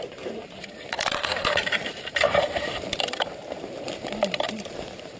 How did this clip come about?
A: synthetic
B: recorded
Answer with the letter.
A